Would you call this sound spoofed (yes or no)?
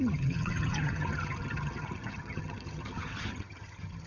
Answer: yes